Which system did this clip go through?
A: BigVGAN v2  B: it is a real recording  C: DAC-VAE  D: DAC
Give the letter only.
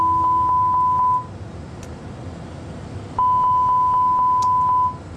B